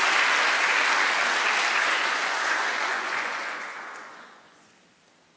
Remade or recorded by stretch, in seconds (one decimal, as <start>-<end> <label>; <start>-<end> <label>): 0.0-1.8 recorded; 1.8-4.8 remade; 4.8-5.4 recorded